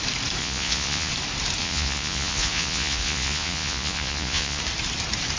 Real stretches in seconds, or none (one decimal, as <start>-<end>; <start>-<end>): 0.0-0.4; 1.1-1.6; 4.6-5.4